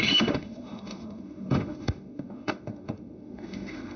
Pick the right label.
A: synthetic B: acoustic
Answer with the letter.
A